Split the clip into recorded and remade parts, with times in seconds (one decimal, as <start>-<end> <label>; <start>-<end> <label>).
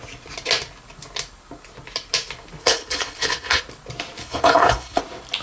0.0-2.6 recorded; 2.6-3.6 remade; 3.6-4.2 recorded; 4.2-5.0 remade; 5.0-5.4 recorded